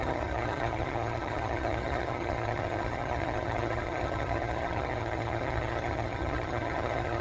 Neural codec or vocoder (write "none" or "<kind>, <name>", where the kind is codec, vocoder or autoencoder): vocoder, HiFi-GAN